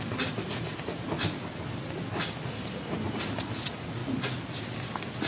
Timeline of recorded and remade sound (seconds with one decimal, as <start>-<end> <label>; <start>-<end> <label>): 0.0-5.3 recorded

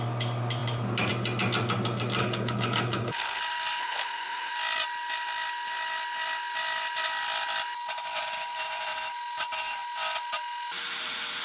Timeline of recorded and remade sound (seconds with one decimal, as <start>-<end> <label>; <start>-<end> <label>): 0.0-2.2 recorded; 2.2-3.4 remade; 3.4-3.8 recorded; 3.8-4.5 remade; 4.5-11.4 recorded

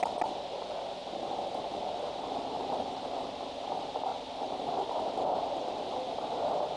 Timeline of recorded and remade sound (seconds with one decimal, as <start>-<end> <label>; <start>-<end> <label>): 0.0-6.8 recorded

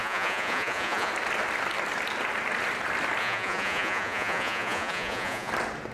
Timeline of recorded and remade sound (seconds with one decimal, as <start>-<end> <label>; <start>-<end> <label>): 0.0-1.1 remade; 1.1-3.2 recorded; 3.2-5.5 remade; 5.5-5.9 recorded

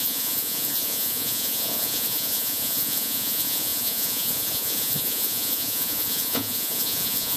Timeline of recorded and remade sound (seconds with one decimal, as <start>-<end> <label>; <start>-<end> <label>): 0.0-7.4 remade